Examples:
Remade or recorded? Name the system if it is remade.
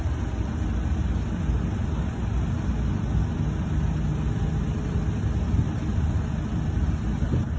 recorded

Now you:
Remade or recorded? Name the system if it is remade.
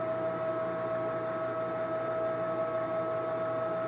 recorded